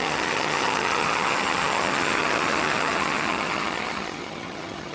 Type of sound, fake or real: fake